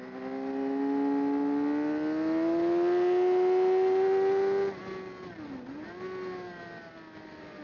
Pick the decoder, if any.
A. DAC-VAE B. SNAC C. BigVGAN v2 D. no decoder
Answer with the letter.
D